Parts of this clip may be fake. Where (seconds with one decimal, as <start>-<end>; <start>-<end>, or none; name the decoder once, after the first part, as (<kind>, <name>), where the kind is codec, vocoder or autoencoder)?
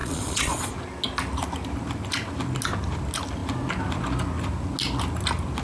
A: 0.0-0.7 (vocoder, Vocos)